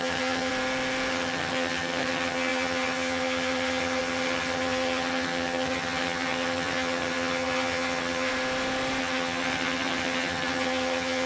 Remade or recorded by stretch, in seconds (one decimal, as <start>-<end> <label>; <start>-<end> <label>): 0.0-0.5 remade; 0.5-1.1 recorded; 1.1-8.3 remade; 8.3-9.0 recorded; 9.0-11.3 remade